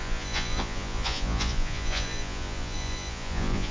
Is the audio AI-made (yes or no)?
yes